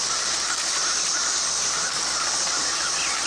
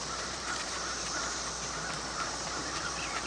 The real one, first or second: first